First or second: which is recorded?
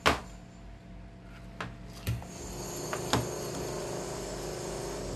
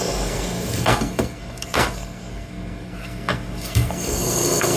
first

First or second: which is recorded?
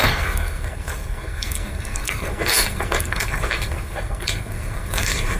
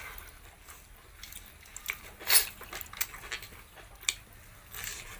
second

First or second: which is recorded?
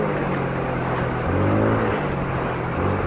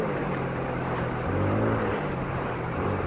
first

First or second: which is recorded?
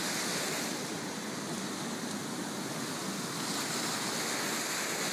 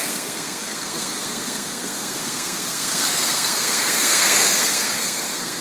first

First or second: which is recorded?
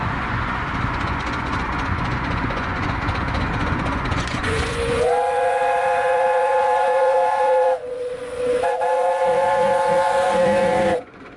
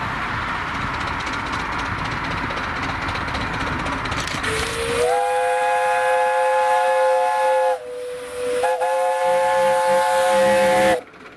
second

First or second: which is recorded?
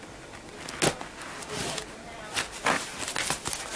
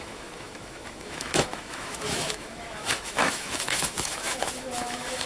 first